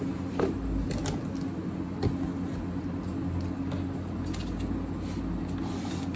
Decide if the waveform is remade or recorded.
recorded